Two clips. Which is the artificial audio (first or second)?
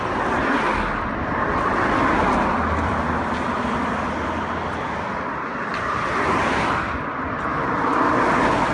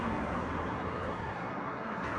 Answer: second